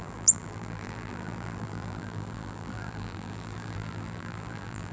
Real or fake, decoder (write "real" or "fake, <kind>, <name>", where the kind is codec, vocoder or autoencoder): fake, vocoder, BigVGAN v2